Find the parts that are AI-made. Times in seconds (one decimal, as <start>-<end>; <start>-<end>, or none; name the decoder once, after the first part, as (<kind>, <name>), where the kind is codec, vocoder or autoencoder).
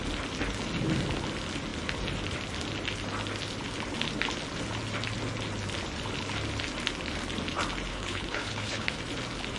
7.9-9.0 (codec, HILCodec)